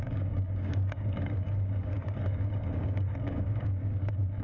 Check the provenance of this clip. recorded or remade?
remade